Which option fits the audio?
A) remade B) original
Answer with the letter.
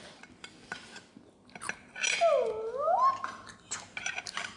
B